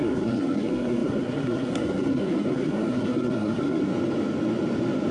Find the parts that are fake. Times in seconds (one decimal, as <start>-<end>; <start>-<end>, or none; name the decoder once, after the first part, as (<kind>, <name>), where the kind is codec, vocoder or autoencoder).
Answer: 0.0-3.8 (codec, SNAC)